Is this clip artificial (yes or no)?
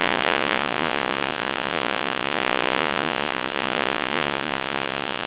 yes